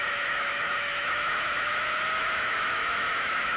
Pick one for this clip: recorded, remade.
remade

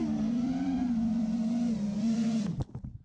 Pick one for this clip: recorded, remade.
remade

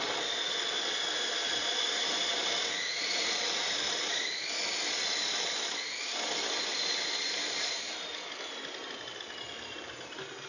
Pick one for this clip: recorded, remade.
recorded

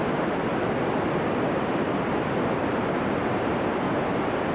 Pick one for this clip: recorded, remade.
recorded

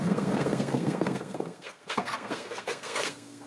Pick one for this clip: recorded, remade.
remade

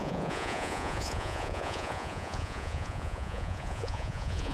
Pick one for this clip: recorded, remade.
remade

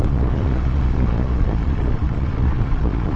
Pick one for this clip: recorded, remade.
remade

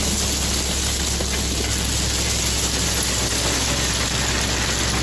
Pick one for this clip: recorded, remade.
recorded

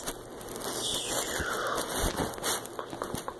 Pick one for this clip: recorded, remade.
recorded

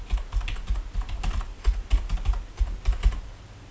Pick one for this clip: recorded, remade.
recorded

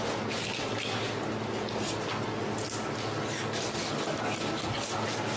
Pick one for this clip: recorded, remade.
recorded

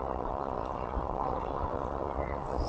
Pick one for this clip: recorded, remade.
remade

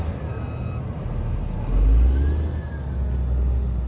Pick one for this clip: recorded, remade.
recorded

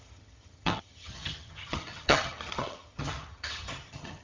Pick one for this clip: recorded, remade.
remade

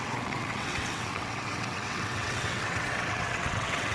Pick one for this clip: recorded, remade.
remade